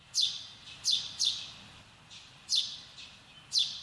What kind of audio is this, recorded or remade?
recorded